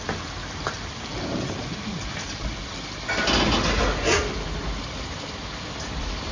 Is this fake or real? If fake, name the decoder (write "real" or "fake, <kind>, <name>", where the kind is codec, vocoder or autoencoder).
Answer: real